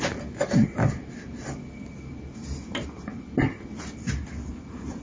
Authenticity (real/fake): real